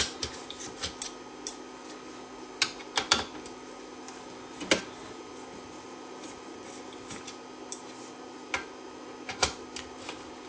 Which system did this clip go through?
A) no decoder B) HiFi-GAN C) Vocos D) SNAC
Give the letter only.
A